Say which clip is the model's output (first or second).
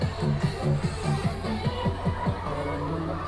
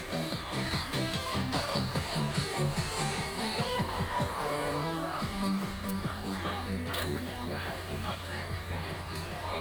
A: second